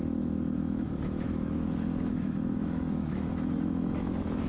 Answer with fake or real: fake